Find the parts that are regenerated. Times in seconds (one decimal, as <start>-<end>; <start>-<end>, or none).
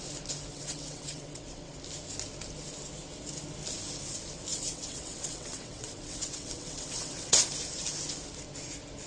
0.5-1.7; 4.5-7.4